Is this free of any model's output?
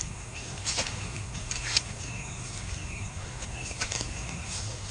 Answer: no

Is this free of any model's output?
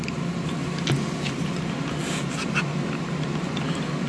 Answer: yes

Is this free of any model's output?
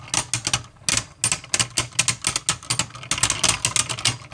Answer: yes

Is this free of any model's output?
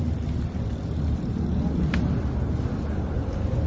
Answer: no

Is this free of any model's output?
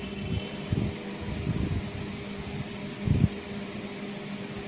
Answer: yes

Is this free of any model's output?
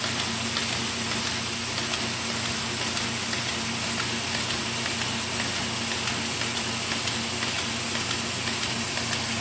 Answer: yes